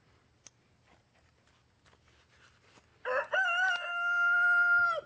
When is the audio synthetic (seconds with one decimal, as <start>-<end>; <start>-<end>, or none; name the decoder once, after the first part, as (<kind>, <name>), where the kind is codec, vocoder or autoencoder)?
none